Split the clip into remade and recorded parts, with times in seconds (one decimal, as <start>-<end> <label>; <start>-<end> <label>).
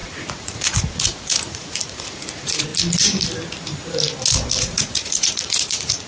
0.0-2.7 remade; 2.7-4.6 recorded; 4.6-6.1 remade